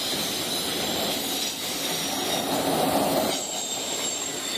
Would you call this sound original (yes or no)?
yes